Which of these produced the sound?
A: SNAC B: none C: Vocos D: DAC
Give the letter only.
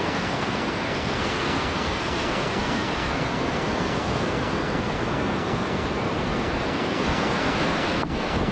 A